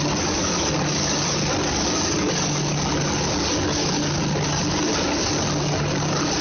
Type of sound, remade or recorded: recorded